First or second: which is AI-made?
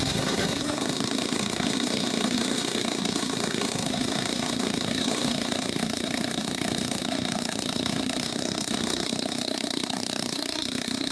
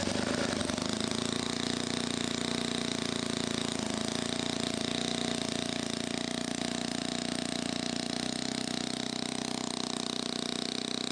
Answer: first